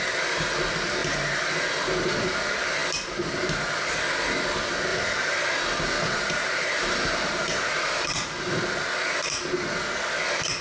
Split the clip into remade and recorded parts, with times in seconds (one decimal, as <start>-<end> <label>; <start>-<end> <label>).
0.0-4.9 recorded; 4.9-8.5 remade; 8.5-10.6 recorded